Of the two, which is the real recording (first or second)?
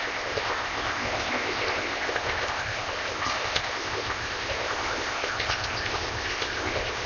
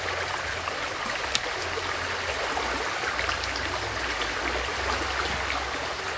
second